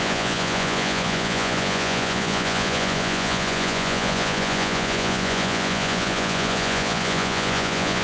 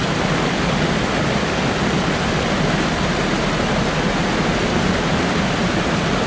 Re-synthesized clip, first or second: first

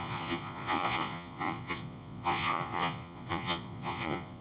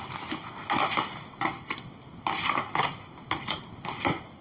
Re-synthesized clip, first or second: first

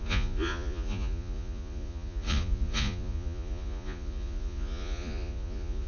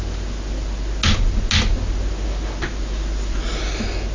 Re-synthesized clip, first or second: first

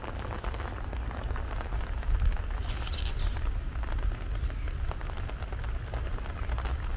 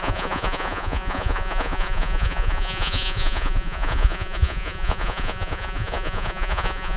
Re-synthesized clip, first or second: second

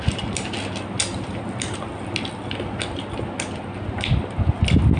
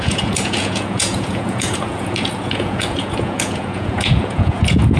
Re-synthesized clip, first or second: second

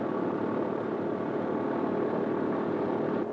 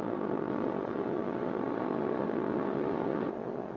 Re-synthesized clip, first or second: second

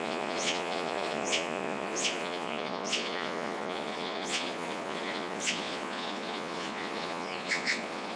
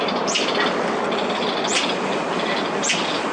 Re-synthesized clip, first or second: first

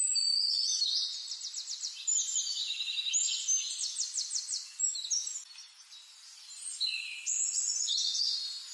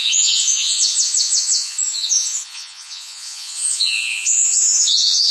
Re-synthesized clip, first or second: second